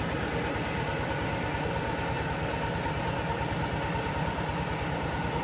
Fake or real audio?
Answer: real